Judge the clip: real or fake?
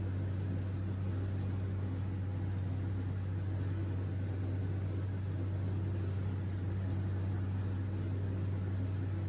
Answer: real